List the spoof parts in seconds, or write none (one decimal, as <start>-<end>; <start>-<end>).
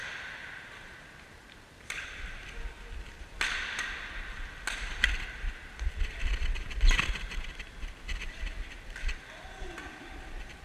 none